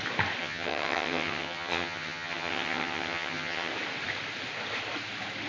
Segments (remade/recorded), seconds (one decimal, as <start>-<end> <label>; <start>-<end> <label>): 0.0-0.4 recorded; 0.4-3.7 remade; 3.7-5.5 recorded